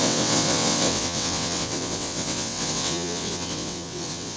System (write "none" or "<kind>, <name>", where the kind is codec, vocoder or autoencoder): vocoder, WaveNeXt